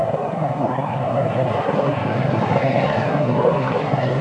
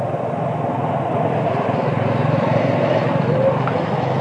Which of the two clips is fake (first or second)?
first